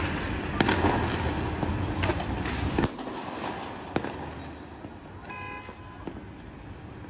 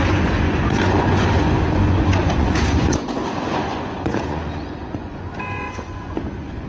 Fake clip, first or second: second